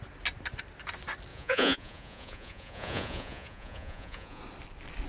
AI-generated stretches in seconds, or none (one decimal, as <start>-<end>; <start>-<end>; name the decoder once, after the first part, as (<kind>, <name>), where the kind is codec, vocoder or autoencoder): 1.3-4.4 (vocoder, Vocos)